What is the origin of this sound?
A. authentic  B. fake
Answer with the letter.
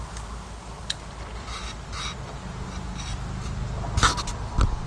A